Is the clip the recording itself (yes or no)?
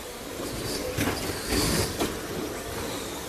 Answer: yes